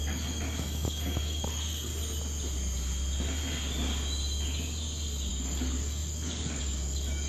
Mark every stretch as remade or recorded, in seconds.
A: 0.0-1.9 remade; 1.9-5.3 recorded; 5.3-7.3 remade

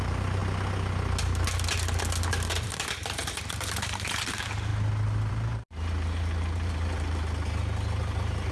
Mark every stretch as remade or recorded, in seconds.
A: 0.0-0.4 remade; 0.4-2.5 recorded; 2.5-4.7 remade; 4.7-5.3 recorded; 5.3-7.2 remade; 7.2-8.0 recorded; 8.0-8.5 remade

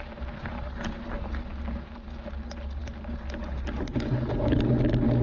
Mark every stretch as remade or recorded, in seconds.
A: 0.0-5.2 recorded

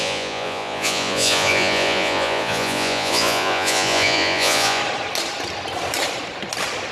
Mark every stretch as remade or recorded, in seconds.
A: 0.0-4.8 remade; 4.8-6.9 recorded

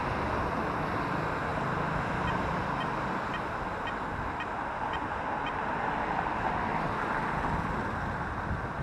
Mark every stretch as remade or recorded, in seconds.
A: 0.0-8.8 recorded

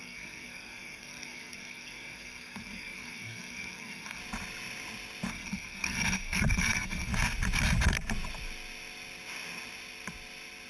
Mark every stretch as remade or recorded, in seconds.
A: 0.0-4.2 remade; 4.2-5.3 recorded; 5.3-7.1 remade; 7.1-10.7 recorded

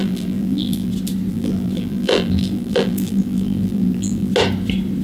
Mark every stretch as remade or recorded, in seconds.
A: 0.0-0.9 remade; 0.9-1.3 recorded; 1.3-4.3 remade; 4.3-5.0 recorded